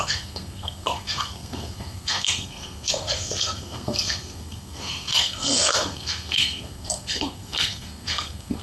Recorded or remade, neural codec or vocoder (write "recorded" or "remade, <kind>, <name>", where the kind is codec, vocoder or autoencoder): remade, codec, SNAC